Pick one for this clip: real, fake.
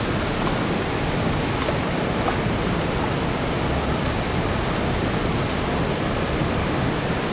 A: real